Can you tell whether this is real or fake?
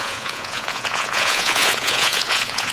fake